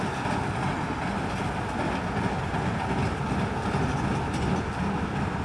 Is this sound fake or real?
real